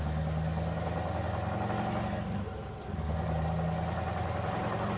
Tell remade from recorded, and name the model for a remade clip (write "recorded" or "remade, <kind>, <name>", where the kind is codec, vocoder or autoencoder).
recorded